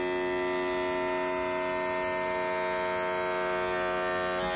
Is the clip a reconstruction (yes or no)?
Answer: no